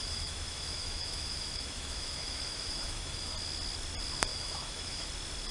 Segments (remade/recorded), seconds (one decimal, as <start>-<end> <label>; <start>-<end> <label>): 0.0-3.3 remade; 3.3-4.3 recorded; 4.3-5.1 remade; 5.1-5.5 recorded